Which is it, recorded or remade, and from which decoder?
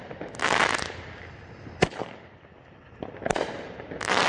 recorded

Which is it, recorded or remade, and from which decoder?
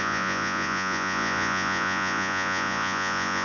remade, vocoder, Vocos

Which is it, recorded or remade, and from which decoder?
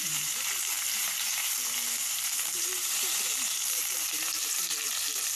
remade, vocoder, BigVGAN v2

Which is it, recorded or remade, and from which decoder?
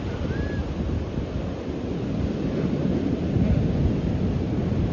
recorded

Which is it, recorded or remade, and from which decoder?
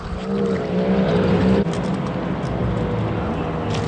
recorded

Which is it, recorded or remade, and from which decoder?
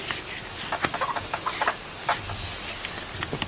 recorded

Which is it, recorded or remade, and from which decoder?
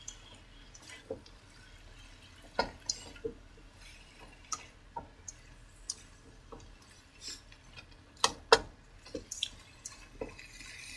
recorded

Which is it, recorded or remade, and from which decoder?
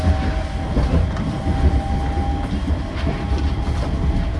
recorded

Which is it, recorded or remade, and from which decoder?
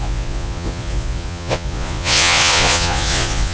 remade, vocoder, Vocos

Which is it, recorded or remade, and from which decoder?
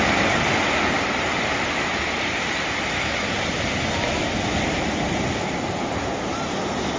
recorded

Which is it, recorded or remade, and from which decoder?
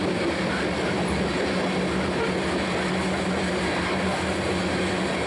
recorded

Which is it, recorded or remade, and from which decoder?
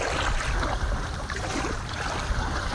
remade, vocoder, BigVGAN v2